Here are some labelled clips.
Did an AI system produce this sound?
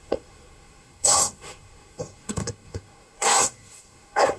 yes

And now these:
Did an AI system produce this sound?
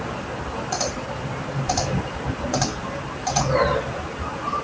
no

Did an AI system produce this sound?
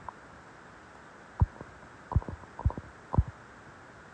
no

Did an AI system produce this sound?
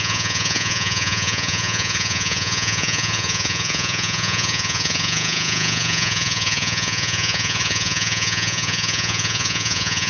yes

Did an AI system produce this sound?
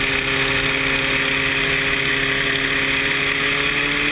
no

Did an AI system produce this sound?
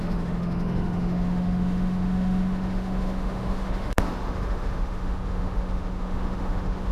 yes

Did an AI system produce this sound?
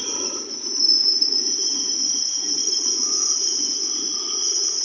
yes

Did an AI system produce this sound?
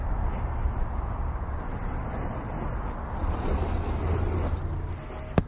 no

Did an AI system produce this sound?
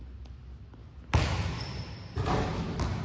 no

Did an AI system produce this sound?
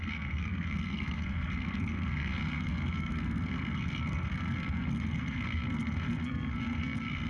yes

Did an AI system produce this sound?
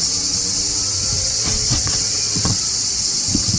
yes